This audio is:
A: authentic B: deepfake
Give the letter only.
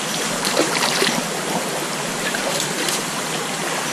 A